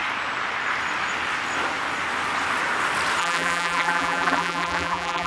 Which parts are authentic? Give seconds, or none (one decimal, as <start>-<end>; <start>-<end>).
0.0-3.2